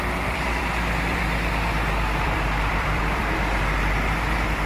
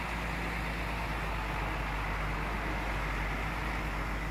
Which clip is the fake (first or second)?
first